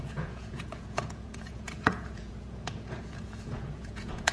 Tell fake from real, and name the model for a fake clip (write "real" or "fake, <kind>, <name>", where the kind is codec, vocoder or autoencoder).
fake, vocoder, Vocos